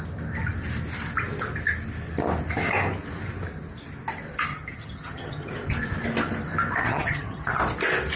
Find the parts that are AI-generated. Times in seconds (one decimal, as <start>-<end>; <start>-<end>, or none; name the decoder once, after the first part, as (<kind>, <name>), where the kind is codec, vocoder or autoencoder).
4.5-5.5 (vocoder, HiFi-GAN); 6.8-7.6